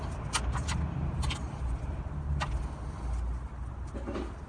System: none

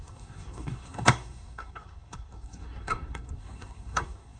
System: codec, SNAC